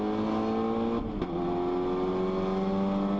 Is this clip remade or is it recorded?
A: recorded